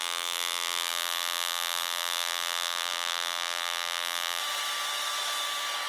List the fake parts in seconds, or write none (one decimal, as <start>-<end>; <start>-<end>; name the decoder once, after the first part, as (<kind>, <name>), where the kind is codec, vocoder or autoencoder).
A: 0.0-4.4 (vocoder, BigVGAN v2)